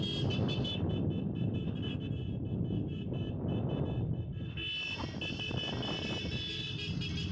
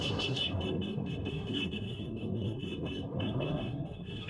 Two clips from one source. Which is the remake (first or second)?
second